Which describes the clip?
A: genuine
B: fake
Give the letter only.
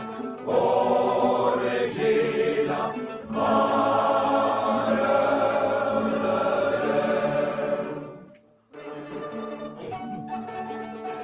B